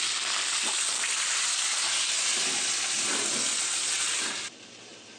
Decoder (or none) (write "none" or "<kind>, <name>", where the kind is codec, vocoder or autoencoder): none